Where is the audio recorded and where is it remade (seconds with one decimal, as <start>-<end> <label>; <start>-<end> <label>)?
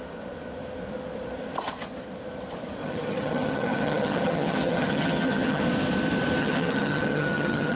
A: 0.0-2.8 recorded; 2.8-5.6 remade; 5.6-6.4 recorded; 6.4-7.8 remade